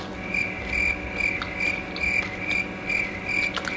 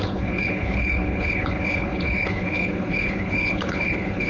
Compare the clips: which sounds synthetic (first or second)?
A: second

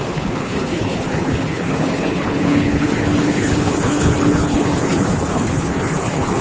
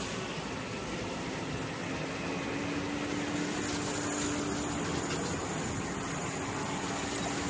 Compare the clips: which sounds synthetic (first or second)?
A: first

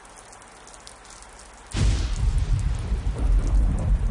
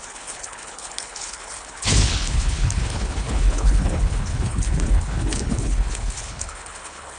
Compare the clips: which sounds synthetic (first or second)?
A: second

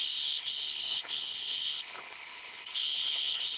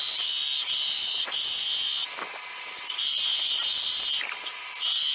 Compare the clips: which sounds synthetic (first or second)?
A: first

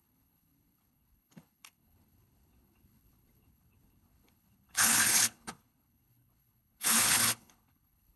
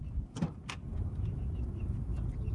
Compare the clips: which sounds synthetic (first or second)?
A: first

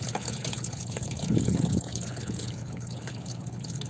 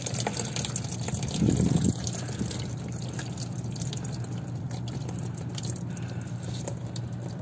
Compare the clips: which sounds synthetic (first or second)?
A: first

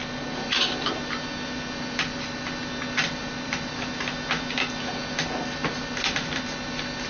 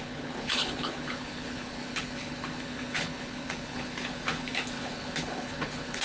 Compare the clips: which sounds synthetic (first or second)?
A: second